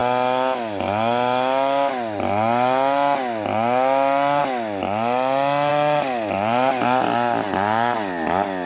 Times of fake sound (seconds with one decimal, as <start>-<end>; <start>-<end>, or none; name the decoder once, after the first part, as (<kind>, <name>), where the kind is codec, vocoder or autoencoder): none